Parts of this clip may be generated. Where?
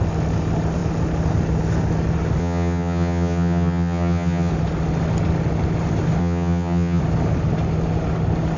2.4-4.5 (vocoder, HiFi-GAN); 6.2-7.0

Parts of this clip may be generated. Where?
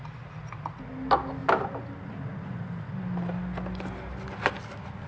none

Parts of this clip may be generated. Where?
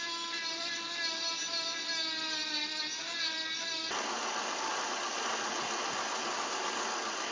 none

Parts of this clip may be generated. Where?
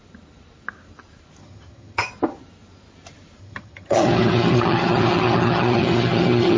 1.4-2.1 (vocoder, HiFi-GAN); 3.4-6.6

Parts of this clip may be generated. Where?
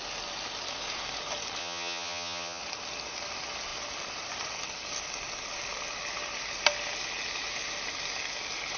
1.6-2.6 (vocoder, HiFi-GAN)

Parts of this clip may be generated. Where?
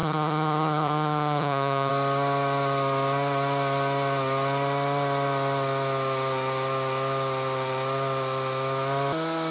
0.0-1.9 (vocoder, HiFi-GAN)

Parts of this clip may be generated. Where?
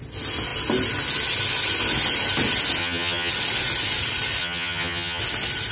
2.8-3.3 (vocoder, HiFi-GAN); 4.4-5.2